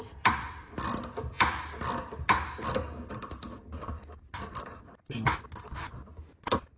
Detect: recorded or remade recorded